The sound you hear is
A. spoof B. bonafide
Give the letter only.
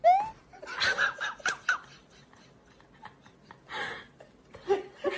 B